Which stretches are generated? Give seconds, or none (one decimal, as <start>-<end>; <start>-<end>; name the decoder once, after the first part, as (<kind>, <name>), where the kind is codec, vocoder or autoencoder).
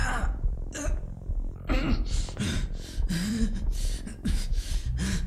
4.1-4.7 (autoencoder, DAC-VAE)